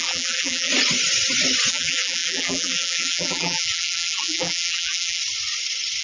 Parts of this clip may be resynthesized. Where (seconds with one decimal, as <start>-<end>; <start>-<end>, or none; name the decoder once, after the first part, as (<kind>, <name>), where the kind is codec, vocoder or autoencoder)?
0.0-0.7 (vocoder, BigVGAN v2); 1.7-5.2